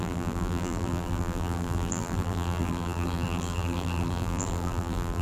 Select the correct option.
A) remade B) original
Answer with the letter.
A